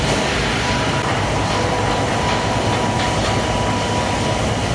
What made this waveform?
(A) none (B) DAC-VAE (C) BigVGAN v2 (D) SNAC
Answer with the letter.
A